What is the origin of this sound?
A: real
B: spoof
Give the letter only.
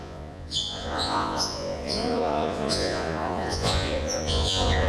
B